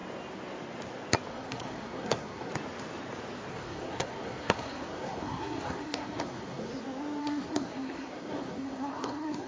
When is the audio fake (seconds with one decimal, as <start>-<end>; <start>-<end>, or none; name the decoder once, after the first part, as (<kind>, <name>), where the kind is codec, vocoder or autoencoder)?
1.3-2.5 (codec, SNAC); 3.5-6.7; 7.2-9.5